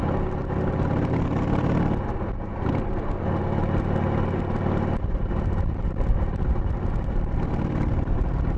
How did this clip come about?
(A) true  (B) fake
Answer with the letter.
A